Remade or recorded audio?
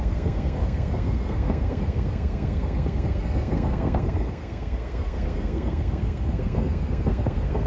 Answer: remade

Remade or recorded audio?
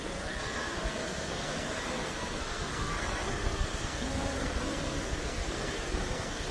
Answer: remade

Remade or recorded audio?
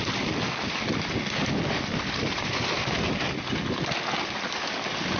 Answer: recorded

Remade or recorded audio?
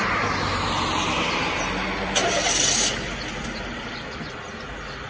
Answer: recorded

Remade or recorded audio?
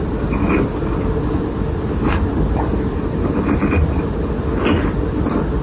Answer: recorded